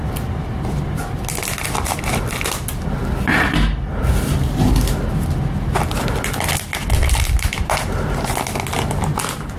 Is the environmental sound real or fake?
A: real